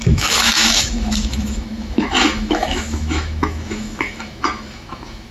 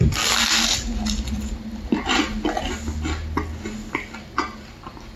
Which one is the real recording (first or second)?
second